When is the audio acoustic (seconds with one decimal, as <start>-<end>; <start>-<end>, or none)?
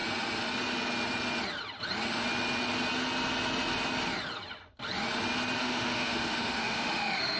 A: 0.0-5.6